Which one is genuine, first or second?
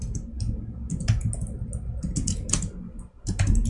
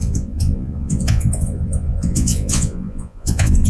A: first